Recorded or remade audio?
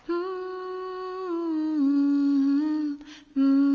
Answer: recorded